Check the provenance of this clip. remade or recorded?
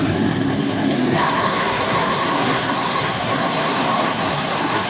remade